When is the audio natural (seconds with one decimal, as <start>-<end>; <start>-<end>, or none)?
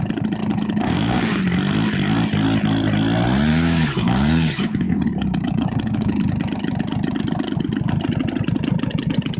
0.0-0.4; 1.4-3.5; 6.3-9.4